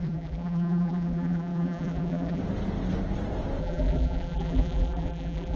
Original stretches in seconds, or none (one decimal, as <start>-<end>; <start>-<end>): 2.4-3.6